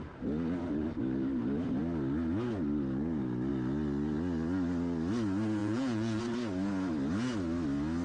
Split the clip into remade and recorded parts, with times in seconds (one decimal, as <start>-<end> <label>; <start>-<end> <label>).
0.0-5.6 recorded; 5.6-6.2 remade; 6.2-8.0 recorded